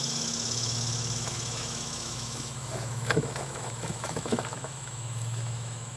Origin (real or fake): fake